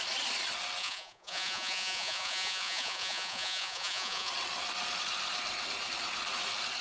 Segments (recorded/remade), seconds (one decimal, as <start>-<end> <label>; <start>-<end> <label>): 0.0-0.8 recorded; 0.8-4.3 remade; 4.3-6.8 recorded